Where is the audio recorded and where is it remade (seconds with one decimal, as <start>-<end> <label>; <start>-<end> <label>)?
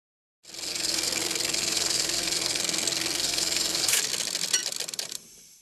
0.0-0.7 recorded; 0.7-4.1 remade; 4.1-5.6 recorded